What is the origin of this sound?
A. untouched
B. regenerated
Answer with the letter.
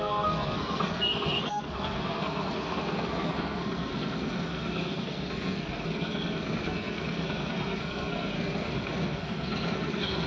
B